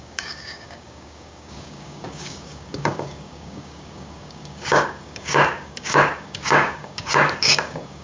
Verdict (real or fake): fake